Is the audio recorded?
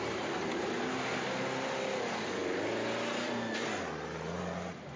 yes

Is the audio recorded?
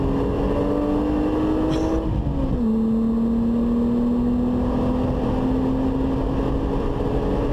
yes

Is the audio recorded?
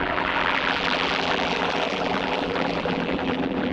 no